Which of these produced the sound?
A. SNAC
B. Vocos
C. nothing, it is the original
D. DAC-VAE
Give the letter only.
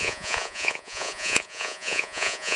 B